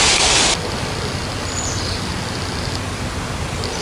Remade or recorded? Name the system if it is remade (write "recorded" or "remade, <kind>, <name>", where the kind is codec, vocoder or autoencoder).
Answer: recorded